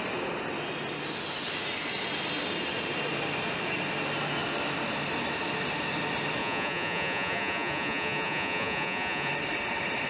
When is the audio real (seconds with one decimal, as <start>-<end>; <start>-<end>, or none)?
0.0-6.4; 9.3-10.1